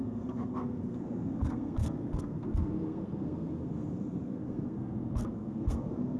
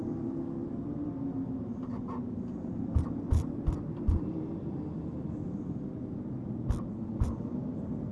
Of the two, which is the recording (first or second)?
second